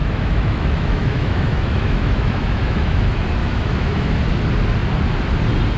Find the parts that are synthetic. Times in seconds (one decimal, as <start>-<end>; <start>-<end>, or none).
0.0-3.0; 3.4-4.2